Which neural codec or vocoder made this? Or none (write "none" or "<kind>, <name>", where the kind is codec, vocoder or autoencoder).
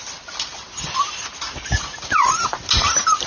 none